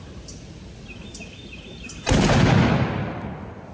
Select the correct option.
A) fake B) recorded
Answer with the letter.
B